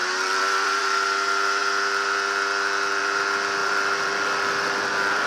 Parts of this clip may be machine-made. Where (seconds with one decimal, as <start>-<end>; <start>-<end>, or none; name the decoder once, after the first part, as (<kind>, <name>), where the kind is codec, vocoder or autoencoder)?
0.0-0.8 (vocoder, BigVGAN v2); 3.6-5.3